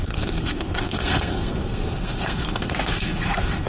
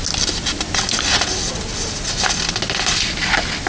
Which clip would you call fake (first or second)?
first